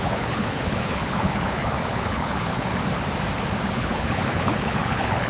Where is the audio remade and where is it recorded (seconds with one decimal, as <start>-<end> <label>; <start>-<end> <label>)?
0.0-2.7 remade; 2.7-3.7 recorded; 3.7-5.3 remade